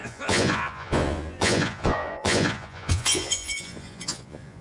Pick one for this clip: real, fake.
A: fake